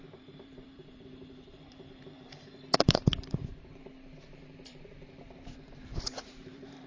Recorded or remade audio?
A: remade